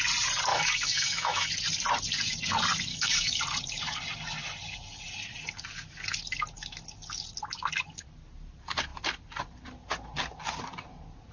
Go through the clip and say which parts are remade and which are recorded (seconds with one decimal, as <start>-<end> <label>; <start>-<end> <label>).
0.0-0.5 recorded; 0.5-1.5 remade; 1.5-2.9 recorded; 2.9-3.4 remade; 3.4-11.3 recorded

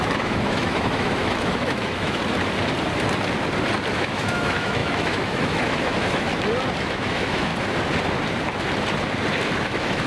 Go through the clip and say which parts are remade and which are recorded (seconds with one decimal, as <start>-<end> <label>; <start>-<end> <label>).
0.0-2.2 remade; 2.2-3.9 recorded; 3.9-6.3 remade; 6.3-6.9 recorded; 6.9-7.5 remade; 7.5-9.6 recorded; 9.6-10.1 remade

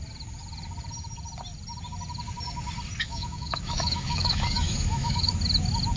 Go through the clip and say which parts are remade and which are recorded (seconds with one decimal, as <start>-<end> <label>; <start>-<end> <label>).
0.0-3.0 recorded; 3.0-5.3 remade; 5.3-6.0 recorded

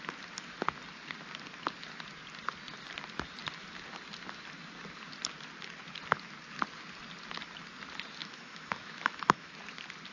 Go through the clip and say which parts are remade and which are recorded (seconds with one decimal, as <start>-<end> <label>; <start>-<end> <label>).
0.0-8.2 recorded; 8.2-9.5 remade; 9.5-10.1 recorded